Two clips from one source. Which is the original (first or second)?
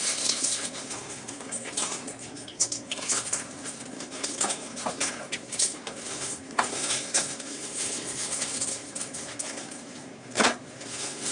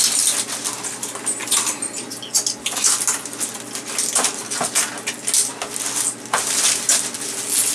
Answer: second